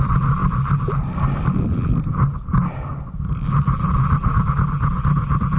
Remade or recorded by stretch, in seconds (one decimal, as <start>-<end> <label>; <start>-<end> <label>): 0.0-5.6 recorded